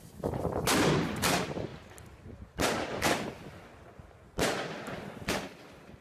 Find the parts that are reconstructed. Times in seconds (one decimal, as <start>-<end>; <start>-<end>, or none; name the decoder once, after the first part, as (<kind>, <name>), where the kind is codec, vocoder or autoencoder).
none